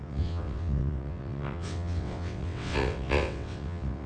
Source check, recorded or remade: remade